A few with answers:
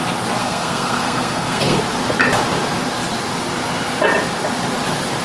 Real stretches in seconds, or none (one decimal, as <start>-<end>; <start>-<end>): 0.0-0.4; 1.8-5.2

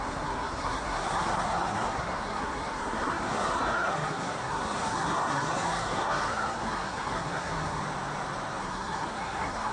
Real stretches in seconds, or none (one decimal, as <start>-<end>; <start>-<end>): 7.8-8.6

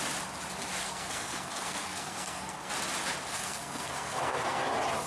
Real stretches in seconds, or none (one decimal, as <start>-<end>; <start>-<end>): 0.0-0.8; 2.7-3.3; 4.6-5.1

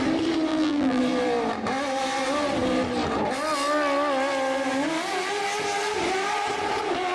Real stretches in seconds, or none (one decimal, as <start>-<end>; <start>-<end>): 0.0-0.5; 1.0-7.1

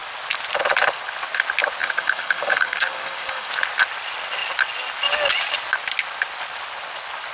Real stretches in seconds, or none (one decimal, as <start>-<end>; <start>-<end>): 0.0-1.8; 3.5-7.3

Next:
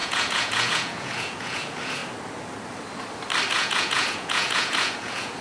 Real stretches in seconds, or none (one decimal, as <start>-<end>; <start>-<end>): 2.0-3.5

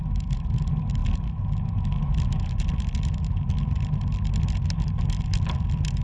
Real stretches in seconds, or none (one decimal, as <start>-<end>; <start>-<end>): 0.0-6.0

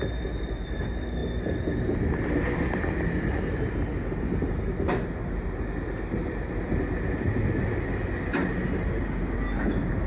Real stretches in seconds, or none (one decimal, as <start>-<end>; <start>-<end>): 0.0-10.1